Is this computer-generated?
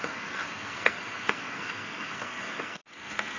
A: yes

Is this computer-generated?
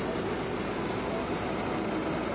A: no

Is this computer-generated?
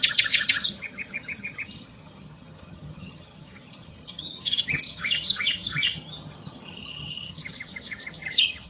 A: yes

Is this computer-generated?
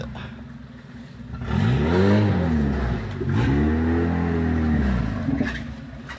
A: no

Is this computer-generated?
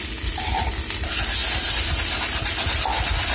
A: no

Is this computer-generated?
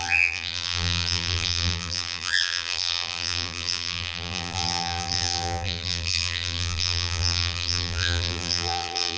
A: yes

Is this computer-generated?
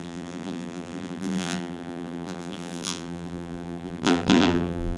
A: yes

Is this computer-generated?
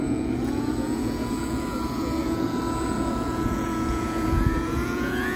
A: yes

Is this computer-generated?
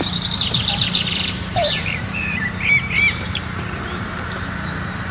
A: yes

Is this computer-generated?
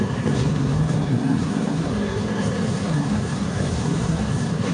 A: yes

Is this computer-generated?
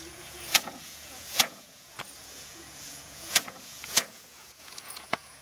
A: yes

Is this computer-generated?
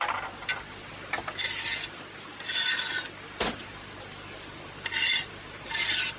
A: no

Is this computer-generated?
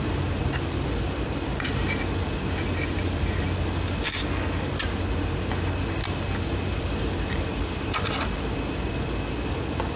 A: no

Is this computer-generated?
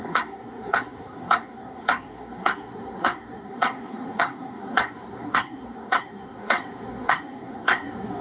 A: yes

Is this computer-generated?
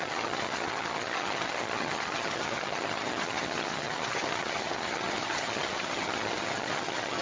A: yes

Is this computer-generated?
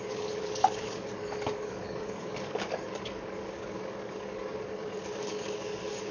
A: yes